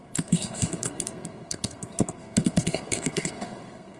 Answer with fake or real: fake